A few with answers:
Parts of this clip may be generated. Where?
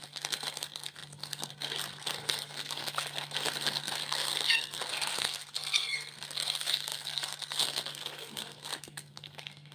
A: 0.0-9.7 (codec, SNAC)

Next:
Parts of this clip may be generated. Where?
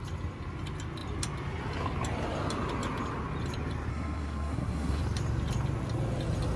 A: 3.9-5.0 (codec, SNAC)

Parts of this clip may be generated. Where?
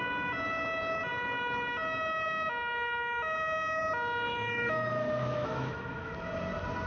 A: 4.3-6.1 (autoencoder, DAC-VAE)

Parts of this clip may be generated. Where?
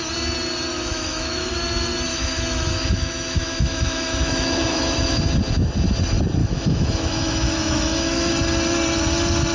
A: 0.7-1.5 (autoencoder, DAC-VAE); 2.1-5.2; 6.4-8.3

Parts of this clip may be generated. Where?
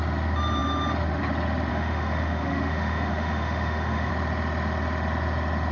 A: 1.7-4.1 (autoencoder, DAC-VAE)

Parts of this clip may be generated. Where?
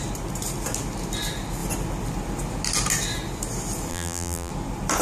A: 3.9-4.5 (vocoder, BigVGAN v2)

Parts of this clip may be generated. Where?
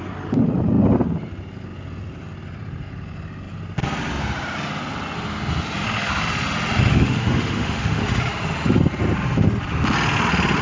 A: 6.9-8.0 (autoencoder, DAC-VAE)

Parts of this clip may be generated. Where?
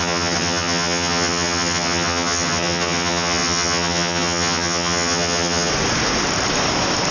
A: 0.0-5.7 (vocoder, HiFi-GAN)